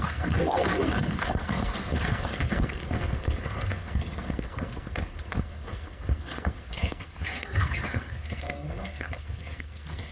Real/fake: fake